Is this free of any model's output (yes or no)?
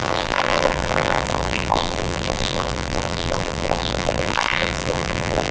no